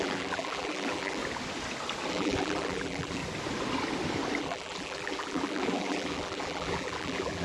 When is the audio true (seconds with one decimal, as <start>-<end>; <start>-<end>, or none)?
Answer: 1.2-2.1; 3.2-4.4